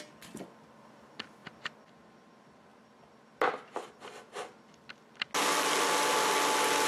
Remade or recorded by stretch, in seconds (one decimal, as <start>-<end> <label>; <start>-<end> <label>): 0.0-6.9 recorded